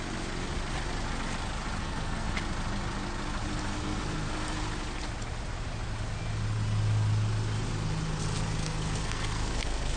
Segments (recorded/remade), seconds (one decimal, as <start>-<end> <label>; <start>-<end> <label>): 0.0-1.8 recorded; 1.8-2.4 remade; 2.4-3.7 recorded; 3.7-4.3 remade; 4.3-8.6 recorded; 8.6-10.0 remade